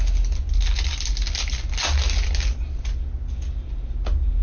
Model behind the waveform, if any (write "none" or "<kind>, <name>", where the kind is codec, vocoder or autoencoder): none